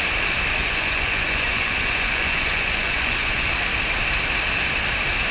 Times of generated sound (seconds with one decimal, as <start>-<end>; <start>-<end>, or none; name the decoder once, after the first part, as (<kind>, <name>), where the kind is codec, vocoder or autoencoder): 0.6-3.5 (vocoder, Vocos)